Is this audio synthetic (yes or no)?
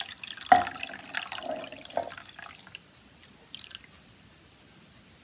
no